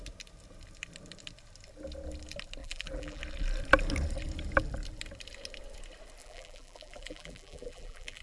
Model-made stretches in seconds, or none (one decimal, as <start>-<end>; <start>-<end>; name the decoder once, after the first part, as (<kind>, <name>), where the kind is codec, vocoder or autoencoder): 2.6-3.2 (vocoder, BigVGAN v2); 6.2-8.2